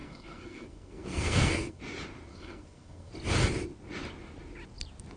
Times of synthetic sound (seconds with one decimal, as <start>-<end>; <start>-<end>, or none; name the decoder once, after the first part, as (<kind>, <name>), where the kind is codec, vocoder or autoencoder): 0.0-1.8 (codec, SNAC); 2.3-3.1

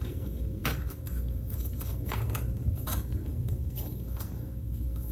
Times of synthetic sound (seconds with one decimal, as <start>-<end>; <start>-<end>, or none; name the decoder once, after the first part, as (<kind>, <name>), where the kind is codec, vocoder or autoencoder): 0.0-5.1 (codec, SNAC)

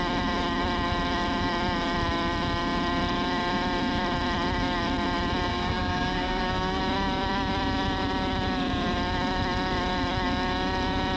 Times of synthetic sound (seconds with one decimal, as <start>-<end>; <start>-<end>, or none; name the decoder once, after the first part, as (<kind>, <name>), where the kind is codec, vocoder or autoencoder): 5.5-6.8 (codec, SNAC)

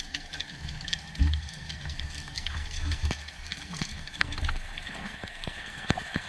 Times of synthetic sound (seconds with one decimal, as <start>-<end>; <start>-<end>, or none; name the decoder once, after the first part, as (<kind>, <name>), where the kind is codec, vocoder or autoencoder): 0.0-6.3 (codec, SNAC)

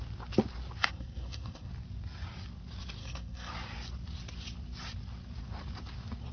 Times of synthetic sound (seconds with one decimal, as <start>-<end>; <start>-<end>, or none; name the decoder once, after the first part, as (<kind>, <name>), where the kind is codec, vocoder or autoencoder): 0.8-1.7 (codec, SNAC); 3.0-3.5

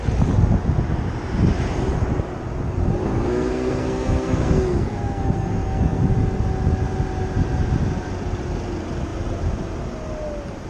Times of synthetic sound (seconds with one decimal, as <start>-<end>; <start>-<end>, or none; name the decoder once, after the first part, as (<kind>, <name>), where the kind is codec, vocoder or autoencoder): 3.1-6.0 (codec, SNAC)

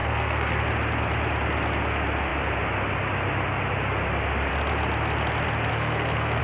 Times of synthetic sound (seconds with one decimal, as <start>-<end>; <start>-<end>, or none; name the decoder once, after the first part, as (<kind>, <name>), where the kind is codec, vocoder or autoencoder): 0.0-0.6 (codec, SNAC); 5.7-6.4